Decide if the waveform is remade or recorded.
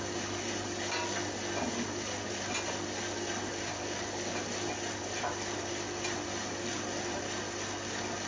recorded